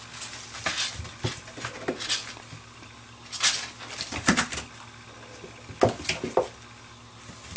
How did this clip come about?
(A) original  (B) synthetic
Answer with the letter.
A